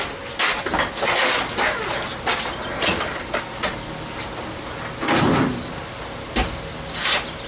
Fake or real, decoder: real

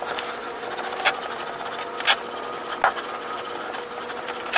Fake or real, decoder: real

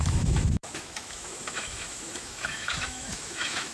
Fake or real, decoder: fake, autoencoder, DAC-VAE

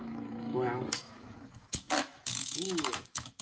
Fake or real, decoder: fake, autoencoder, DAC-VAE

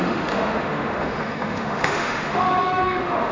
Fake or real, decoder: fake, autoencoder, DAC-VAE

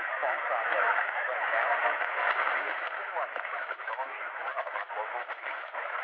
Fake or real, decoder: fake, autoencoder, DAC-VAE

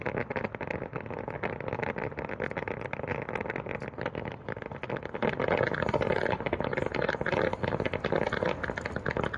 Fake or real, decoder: real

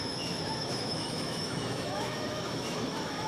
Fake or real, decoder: fake, autoencoder, DAC-VAE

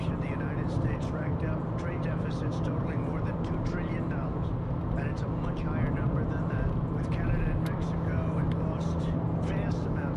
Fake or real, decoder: real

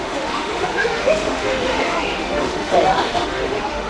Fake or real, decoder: fake, autoencoder, DAC-VAE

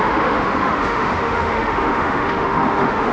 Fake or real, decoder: fake, autoencoder, DAC-VAE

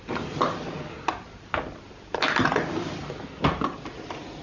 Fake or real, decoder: real